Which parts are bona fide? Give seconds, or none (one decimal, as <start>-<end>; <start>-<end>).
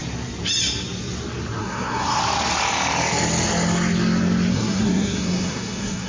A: 0.0-1.6; 2.2-4.5